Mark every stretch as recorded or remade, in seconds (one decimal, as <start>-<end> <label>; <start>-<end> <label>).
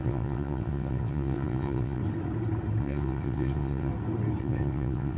0.0-2.0 remade; 2.0-2.8 recorded; 2.8-3.9 remade; 3.9-4.4 recorded; 4.4-5.2 remade